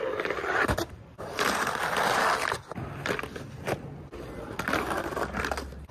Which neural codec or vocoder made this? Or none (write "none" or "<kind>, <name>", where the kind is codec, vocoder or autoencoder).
none